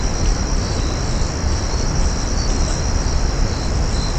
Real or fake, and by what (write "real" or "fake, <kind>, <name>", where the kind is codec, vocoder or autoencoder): real